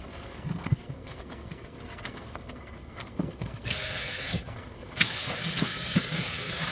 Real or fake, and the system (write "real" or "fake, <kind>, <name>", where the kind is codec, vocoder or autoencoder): fake, codec, SNAC